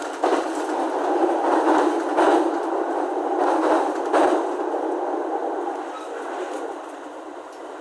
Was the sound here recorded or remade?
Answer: recorded